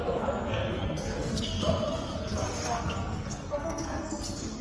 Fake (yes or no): yes